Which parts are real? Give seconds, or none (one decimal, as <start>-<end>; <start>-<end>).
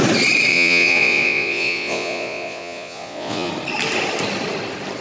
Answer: 0.0-0.5; 3.5-5.0